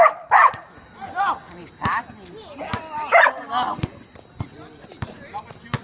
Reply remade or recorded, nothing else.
recorded